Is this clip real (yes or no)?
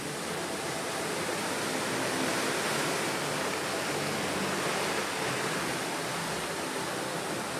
yes